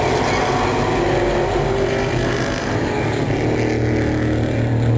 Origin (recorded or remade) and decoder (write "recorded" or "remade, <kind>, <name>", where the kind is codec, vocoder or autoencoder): recorded